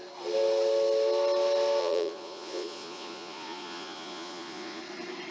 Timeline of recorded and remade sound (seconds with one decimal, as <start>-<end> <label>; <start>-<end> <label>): 0.0-1.8 recorded; 1.8-4.8 remade; 4.8-5.3 recorded